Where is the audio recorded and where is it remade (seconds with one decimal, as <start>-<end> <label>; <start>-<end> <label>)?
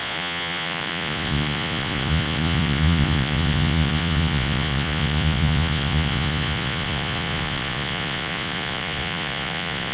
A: 0.0-9.9 remade